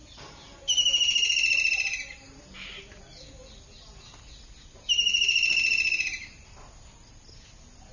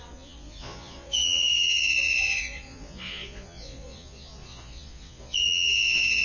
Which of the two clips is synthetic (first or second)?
second